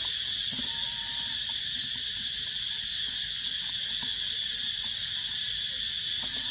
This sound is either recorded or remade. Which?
recorded